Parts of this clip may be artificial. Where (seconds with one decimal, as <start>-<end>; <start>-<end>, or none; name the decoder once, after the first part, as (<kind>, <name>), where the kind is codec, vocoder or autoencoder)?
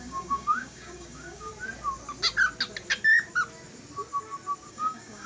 0.0-1.5 (codec, DAC); 4.7-5.3